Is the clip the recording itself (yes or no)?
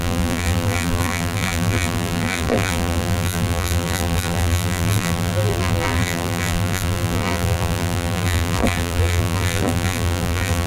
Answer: no